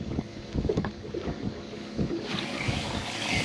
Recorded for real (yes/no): no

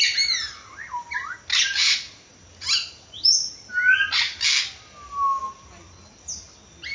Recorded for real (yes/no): yes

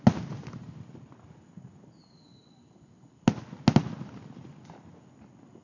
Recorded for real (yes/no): yes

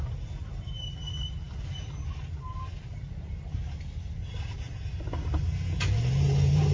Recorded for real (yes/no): yes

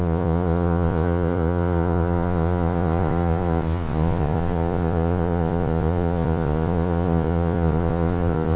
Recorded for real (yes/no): no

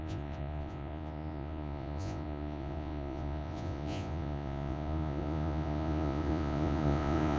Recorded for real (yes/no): no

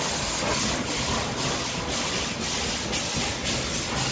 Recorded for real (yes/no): yes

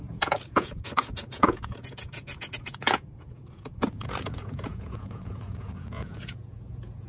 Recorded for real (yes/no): no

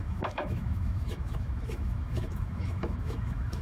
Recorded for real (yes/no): no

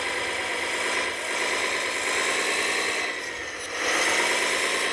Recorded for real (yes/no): yes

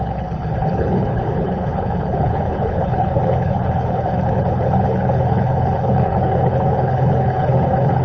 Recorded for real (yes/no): no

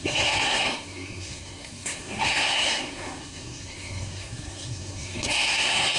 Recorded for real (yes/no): no